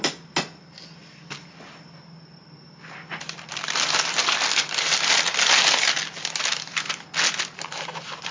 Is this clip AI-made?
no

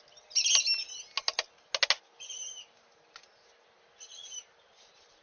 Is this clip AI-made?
no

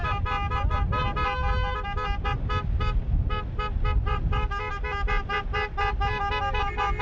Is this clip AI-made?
no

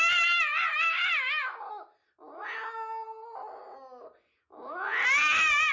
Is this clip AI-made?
no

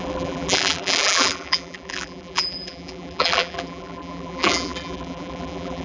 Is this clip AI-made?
yes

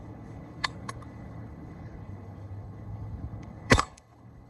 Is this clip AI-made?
yes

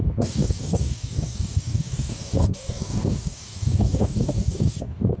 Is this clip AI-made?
yes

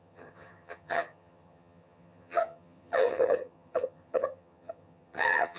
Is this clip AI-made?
yes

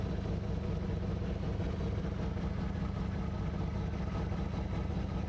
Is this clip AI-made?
no